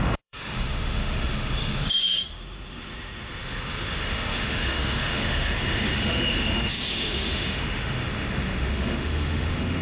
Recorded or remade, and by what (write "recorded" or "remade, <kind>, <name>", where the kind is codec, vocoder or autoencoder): remade, autoencoder, DAC-VAE